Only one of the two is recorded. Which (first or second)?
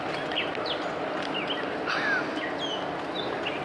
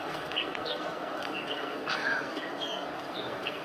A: first